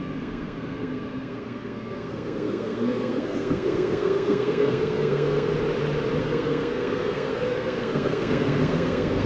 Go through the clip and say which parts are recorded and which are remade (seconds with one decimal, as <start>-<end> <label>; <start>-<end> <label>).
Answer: 0.0-5.5 remade; 5.5-6.2 recorded; 6.2-9.3 remade